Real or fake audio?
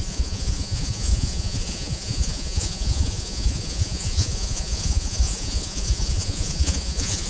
fake